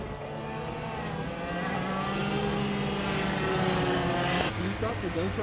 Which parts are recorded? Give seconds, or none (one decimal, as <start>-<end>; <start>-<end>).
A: 0.0-5.4